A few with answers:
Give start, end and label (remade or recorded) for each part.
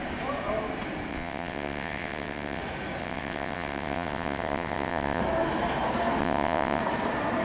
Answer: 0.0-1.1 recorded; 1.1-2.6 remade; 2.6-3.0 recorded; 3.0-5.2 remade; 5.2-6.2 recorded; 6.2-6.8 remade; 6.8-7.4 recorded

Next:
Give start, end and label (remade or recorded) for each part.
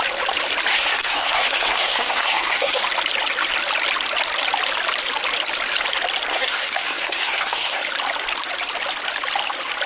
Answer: 0.0-0.7 recorded; 0.7-2.8 remade; 2.8-6.3 recorded; 6.3-7.8 remade; 7.8-9.9 recorded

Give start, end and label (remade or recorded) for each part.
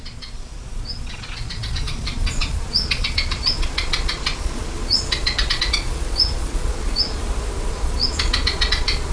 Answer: 0.0-7.2 remade; 7.2-7.7 recorded; 7.7-9.1 remade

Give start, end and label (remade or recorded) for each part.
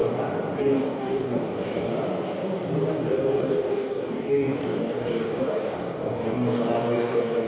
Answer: 0.0-0.6 recorded; 0.6-1.9 remade; 1.9-2.9 recorded; 2.9-7.5 remade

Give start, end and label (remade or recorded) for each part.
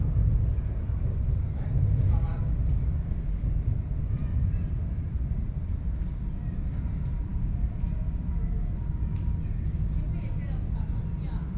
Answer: 0.0-4.2 recorded; 4.2-5.6 remade; 5.6-11.6 recorded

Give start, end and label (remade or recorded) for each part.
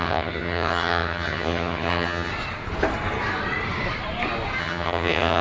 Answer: 0.0-2.3 remade; 2.3-4.6 recorded; 4.6-5.4 remade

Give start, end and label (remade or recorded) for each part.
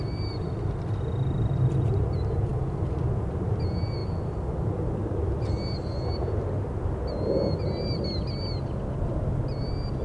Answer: 0.0-10.0 recorded